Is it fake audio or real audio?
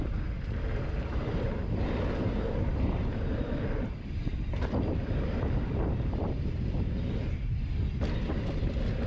fake